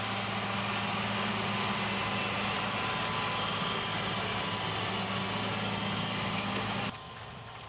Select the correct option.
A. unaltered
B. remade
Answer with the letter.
A